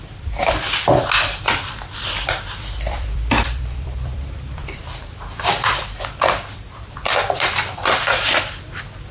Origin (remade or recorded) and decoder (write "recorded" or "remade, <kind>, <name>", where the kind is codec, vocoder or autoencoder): remade, vocoder, BigVGAN v2